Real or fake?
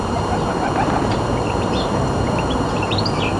fake